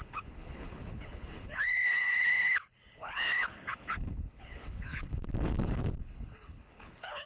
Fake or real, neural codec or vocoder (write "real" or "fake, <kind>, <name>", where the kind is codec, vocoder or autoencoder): fake, codec, HILCodec